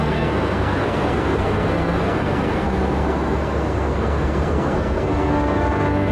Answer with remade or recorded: remade